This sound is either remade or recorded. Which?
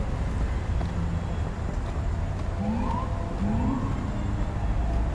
recorded